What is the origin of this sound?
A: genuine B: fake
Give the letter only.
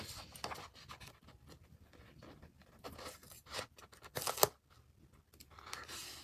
A